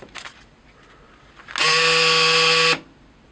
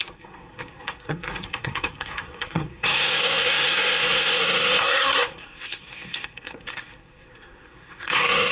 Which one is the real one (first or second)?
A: first